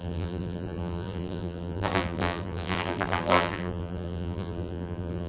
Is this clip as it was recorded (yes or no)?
no